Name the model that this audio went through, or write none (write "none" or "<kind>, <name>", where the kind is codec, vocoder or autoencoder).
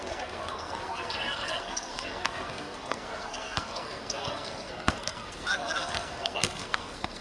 codec, SNAC